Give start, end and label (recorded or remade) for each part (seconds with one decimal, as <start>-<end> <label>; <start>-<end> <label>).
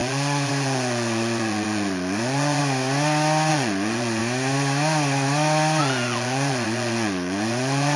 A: 0.0-2.6 remade; 2.6-3.5 recorded; 3.5-4.2 remade; 4.2-5.8 recorded; 5.8-8.0 remade